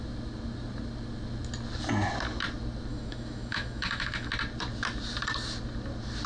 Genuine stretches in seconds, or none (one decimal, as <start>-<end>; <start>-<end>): 0.0-2.9; 4.3-6.3